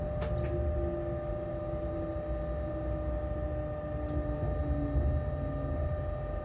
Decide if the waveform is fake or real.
real